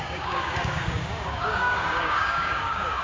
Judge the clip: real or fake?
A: fake